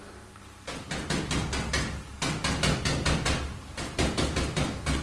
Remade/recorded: recorded